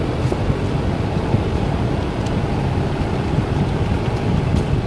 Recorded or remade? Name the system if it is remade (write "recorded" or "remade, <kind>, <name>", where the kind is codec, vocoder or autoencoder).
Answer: recorded